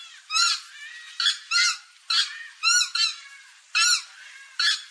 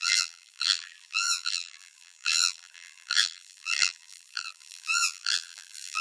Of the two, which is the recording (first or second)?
first